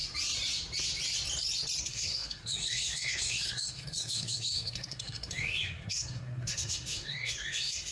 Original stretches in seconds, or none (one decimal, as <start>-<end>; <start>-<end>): 0.0-1.8